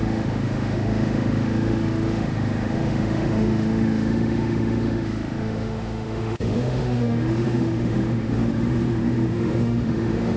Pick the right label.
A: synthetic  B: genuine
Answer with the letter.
A